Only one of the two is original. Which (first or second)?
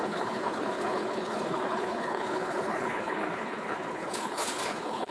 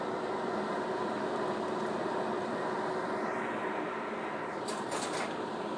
second